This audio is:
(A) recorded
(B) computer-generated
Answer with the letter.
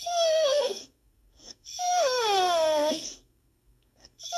B